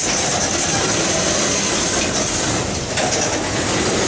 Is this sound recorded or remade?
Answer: recorded